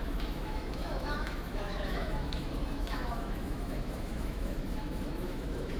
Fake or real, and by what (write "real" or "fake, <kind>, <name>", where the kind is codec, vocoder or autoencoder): fake, autoencoder, DAC-VAE